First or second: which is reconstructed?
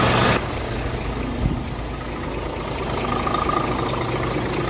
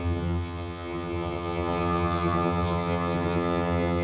second